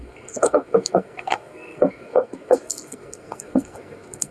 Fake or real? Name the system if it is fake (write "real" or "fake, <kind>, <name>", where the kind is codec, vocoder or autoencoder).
fake, codec, SNAC